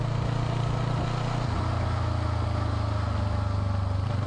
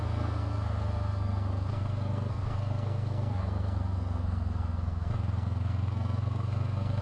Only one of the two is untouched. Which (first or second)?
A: first